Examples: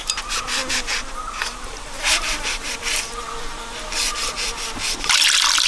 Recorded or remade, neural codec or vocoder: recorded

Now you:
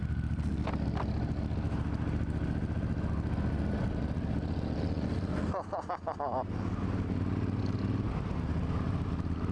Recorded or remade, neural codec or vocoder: recorded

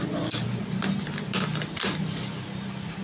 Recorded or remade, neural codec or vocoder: recorded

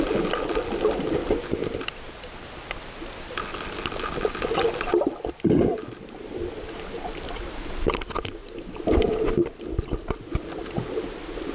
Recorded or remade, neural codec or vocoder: recorded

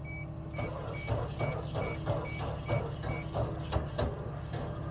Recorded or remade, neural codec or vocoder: recorded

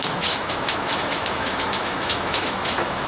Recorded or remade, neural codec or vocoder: remade, autoencoder, DAC-VAE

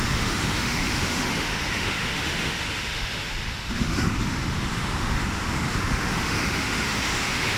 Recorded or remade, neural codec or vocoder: remade, autoencoder, DAC-VAE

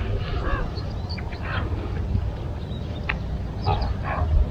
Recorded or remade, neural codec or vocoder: recorded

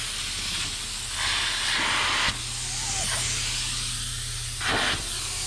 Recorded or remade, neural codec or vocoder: recorded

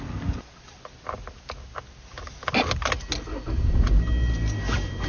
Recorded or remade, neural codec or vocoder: recorded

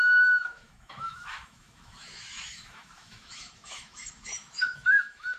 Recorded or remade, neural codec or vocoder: remade, autoencoder, DAC-VAE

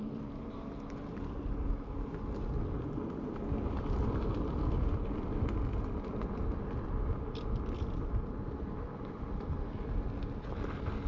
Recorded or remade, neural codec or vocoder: recorded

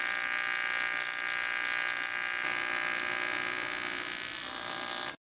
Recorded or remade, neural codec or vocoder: recorded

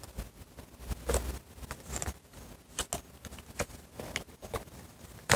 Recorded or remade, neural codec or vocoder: recorded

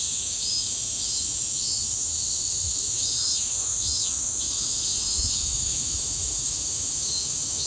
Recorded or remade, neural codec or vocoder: remade, autoencoder, DAC-VAE